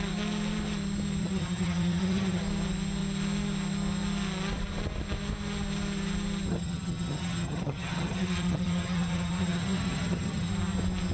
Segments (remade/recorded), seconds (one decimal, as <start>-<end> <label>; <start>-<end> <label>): 0.0-1.2 recorded; 1.2-2.4 remade; 2.4-6.5 recorded; 6.5-10.5 remade; 10.5-11.1 recorded

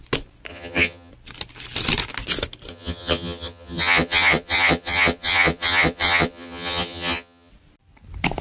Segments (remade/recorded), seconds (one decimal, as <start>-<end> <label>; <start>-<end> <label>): 0.0-0.5 recorded; 0.5-1.1 remade; 1.1-2.7 recorded; 2.7-7.5 remade; 7.5-8.4 recorded

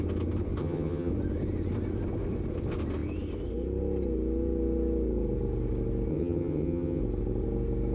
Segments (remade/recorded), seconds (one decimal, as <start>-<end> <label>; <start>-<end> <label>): 0.0-0.6 recorded; 0.6-1.1 remade; 1.1-6.1 recorded; 6.1-7.0 remade; 7.0-7.9 recorded

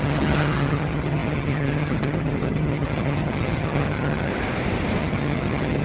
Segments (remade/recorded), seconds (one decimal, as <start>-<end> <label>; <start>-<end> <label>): 0.0-4.3 remade; 4.3-5.0 recorded; 5.0-5.8 remade

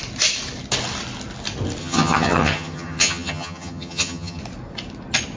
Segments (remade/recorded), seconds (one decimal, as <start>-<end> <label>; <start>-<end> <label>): 0.0-1.8 recorded; 1.8-4.4 remade; 4.4-5.4 recorded